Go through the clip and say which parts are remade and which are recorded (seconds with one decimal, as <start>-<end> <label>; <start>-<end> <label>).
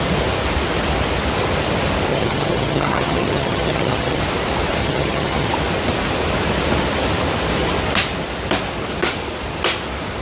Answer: 0.0-2.1 recorded; 2.1-4.2 remade; 4.2-4.8 recorded; 4.8-5.5 remade; 5.5-10.2 recorded